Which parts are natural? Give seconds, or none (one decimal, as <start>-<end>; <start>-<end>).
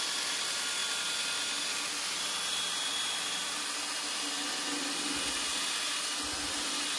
0.0-7.0